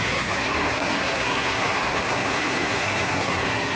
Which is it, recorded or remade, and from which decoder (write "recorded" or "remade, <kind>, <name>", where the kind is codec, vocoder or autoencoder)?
remade, codec, SNAC